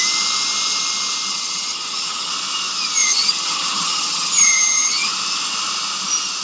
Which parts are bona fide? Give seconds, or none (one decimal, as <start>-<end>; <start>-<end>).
0.0-1.3; 2.3-3.0; 5.1-6.4